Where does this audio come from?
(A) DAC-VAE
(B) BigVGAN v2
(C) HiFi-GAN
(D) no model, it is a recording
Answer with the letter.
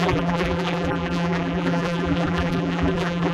B